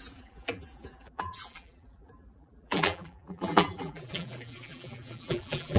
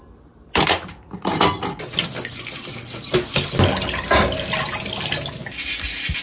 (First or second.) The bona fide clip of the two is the second